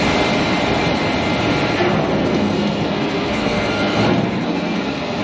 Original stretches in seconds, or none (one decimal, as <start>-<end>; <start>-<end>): 0.0-2.2

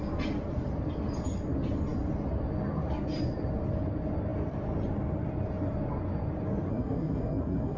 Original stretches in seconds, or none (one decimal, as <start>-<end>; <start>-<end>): 0.0-6.7

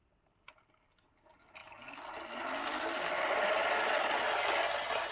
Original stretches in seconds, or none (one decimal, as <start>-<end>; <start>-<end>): 0.0-5.1

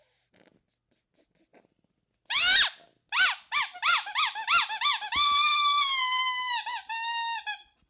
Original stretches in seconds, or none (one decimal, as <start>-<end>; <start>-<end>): 0.0-7.9

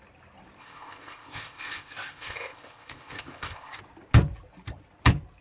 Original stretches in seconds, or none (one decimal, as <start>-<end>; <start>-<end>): 0.0-0.6; 3.8-5.4

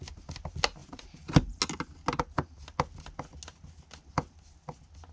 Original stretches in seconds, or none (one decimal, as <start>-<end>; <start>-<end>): 0.0-0.8; 1.6-5.1

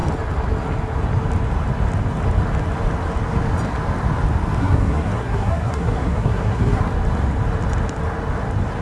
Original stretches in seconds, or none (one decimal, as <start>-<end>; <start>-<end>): 0.0-4.6; 6.8-8.8